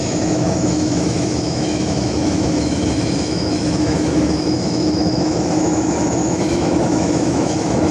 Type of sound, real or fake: fake